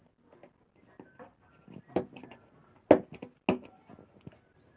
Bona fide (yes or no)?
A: yes